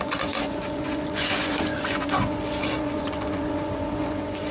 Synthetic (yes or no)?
yes